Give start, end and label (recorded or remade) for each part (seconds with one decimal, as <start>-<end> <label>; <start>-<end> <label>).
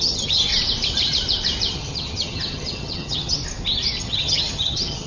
0.0-0.5 remade; 0.5-1.7 recorded; 1.7-3.4 remade; 3.4-4.0 recorded; 4.0-5.1 remade